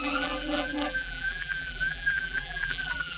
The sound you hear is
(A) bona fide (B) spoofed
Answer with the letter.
B